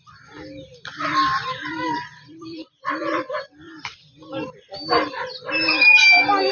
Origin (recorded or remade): recorded